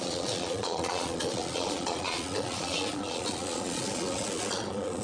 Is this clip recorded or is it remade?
remade